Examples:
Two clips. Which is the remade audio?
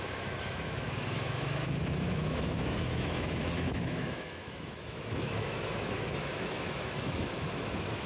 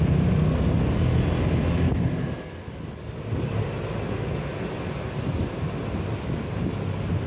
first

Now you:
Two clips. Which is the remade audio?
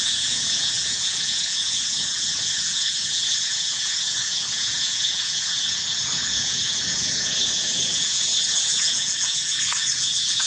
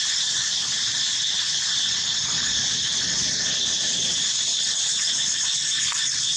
first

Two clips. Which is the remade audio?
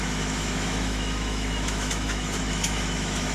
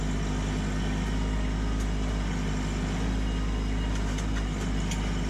first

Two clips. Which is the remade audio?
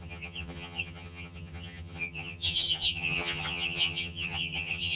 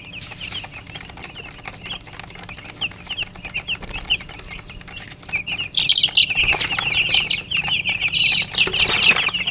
first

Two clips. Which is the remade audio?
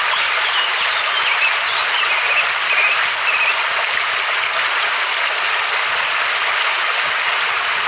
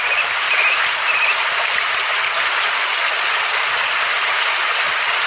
second